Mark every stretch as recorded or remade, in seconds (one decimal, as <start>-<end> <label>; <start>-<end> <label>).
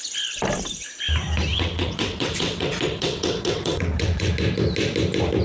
0.0-1.5 recorded; 1.5-4.3 remade; 4.3-5.4 recorded